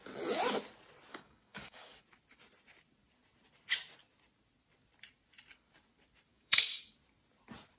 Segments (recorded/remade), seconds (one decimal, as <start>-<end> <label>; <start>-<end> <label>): 0.0-1.1 recorded; 1.1-2.0 remade; 2.0-6.3 recorded; 6.3-6.8 remade; 6.8-7.8 recorded